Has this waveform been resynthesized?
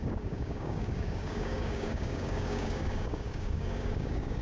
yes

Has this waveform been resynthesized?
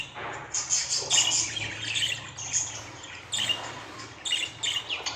no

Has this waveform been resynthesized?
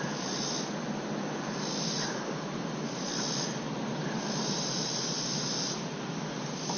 no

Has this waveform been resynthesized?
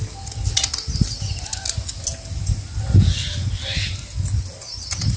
no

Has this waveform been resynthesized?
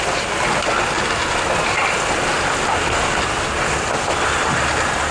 no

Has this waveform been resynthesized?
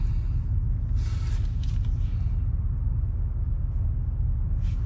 no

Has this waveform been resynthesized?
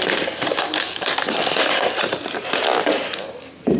no